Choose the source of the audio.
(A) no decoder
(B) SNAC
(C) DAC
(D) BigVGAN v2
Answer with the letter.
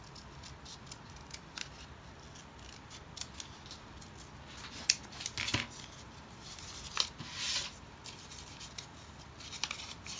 A